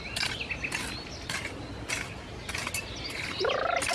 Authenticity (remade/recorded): recorded